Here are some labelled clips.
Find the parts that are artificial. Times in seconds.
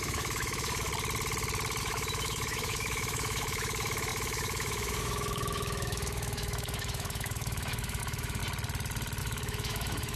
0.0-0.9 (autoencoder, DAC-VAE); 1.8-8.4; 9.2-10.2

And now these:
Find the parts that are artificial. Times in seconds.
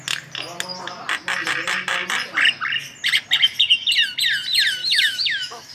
4.8-5.7 (autoencoder, DAC-VAE)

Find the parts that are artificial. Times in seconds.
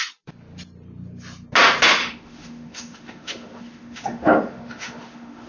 2.0-5.5 (autoencoder, DAC-VAE)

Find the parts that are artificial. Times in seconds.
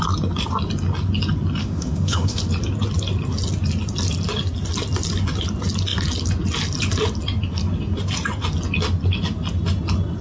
1.6-2.4 (autoencoder, DAC-VAE)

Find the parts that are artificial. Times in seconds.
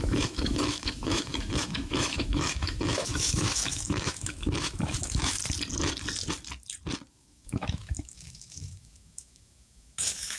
0.0-5.4 (autoencoder, DAC-VAE); 7.1-10.4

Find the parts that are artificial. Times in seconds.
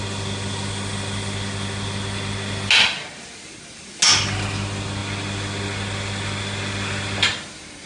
none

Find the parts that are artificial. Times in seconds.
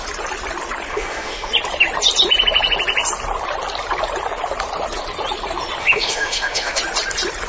0.9-1.5 (autoencoder, DAC-VAE); 5.8-6.8